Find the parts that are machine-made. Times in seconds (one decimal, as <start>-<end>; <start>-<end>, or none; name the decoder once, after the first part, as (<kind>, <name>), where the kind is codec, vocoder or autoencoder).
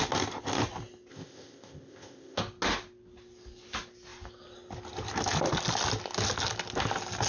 1.1-2.4 (codec, ZipCodec)